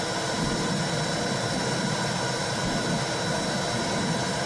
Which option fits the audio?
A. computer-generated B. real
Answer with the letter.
B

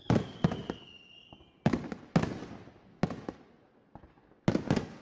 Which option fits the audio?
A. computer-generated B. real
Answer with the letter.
B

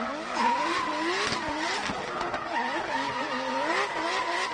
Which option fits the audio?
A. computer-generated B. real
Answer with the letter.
B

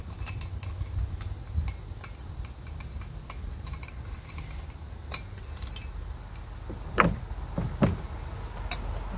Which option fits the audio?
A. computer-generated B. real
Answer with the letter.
B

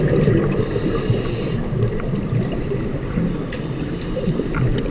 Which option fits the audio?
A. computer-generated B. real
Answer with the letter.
B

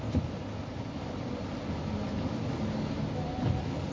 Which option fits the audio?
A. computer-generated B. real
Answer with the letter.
B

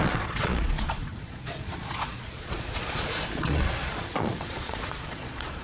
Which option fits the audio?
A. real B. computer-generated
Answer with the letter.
B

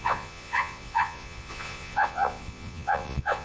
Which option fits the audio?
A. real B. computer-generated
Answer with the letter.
B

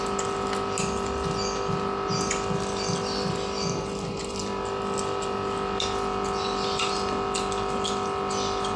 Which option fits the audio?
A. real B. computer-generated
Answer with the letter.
A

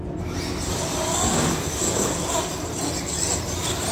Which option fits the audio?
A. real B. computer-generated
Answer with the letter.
A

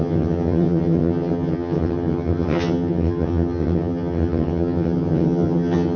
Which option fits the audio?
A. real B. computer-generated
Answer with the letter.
B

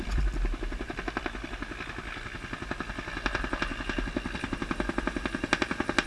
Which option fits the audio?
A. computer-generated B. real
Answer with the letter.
B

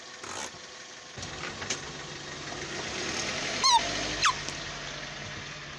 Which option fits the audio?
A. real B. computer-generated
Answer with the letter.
A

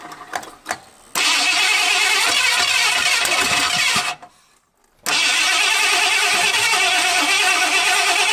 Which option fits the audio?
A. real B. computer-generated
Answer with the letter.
A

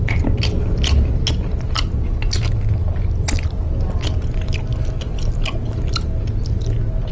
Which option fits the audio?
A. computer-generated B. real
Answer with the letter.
B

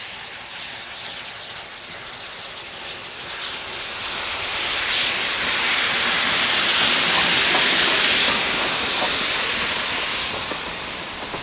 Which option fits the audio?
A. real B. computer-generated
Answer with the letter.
A